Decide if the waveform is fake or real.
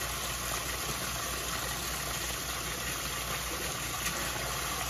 real